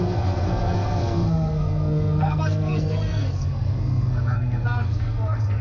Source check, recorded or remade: remade